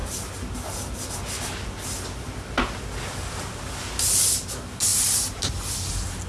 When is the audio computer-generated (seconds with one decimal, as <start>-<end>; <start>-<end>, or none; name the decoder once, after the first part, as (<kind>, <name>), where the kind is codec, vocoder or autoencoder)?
4.9-5.4 (vocoder, BigVGAN v2)